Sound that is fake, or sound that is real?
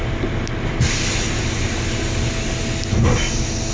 real